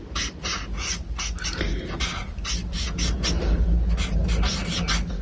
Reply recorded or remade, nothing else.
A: recorded